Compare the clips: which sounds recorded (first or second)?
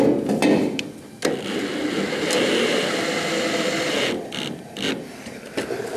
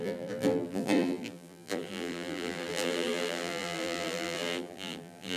first